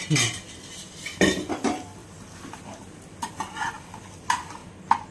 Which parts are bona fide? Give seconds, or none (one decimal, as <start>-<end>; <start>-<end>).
2.0-3.7; 4.6-5.1